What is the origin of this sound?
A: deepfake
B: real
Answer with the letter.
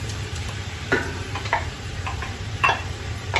A